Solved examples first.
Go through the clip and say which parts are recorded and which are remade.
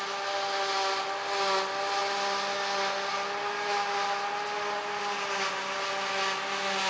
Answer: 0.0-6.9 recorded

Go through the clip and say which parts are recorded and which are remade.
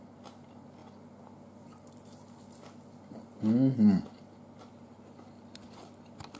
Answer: 0.0-6.4 recorded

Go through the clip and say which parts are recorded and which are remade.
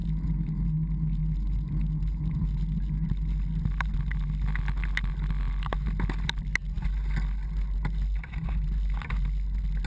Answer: 0.0-9.9 recorded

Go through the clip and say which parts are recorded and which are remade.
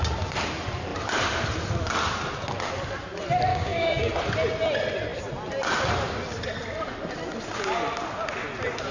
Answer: 0.0-3.5 recorded; 3.5-4.1 remade; 4.1-8.9 recorded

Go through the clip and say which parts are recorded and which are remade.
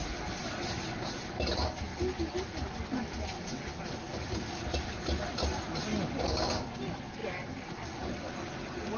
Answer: 0.0-9.0 recorded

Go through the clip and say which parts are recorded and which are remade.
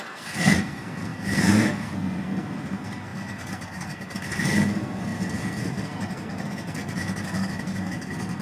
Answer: 0.0-8.4 remade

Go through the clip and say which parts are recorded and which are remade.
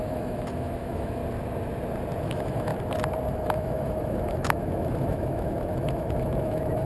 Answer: 0.0-1.2 remade; 1.2-2.2 recorded; 2.2-2.7 remade; 2.7-3.3 recorded; 3.3-6.9 remade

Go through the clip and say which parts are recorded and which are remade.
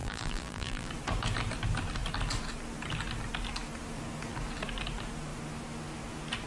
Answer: 0.0-0.9 remade; 0.9-6.5 recorded